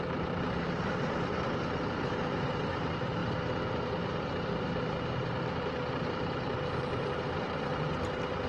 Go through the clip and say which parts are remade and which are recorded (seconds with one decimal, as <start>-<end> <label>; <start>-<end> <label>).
0.0-8.5 remade